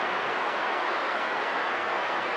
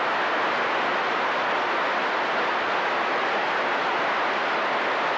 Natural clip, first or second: second